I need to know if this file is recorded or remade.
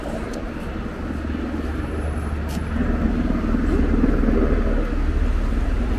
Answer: recorded